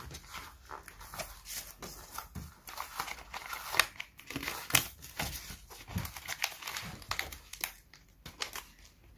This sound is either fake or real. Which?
real